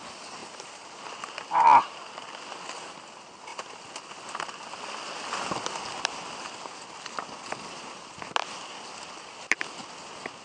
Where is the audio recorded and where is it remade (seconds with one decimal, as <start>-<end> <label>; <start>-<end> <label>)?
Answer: 0.0-10.4 recorded